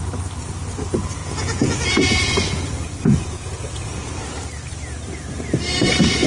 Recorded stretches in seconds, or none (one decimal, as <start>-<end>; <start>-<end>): 0.0-1.2; 4.2-6.3